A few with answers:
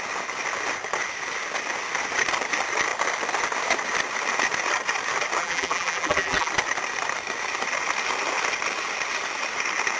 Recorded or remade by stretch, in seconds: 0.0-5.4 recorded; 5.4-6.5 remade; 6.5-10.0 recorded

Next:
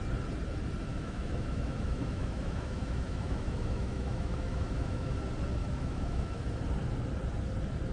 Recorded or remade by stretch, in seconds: 0.0-0.9 recorded; 0.9-5.1 remade; 5.1-5.6 recorded; 5.6-6.6 remade; 6.6-7.9 recorded